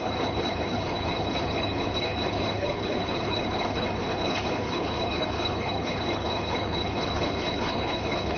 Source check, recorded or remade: remade